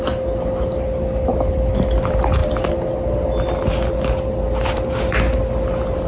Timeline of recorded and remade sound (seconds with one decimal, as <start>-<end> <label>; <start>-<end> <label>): 0.0-6.1 recorded